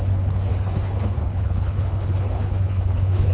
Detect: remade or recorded remade